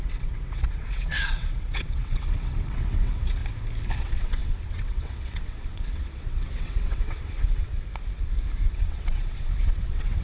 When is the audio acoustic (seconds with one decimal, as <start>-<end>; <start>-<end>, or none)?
3.4-4.0; 7.7-8.7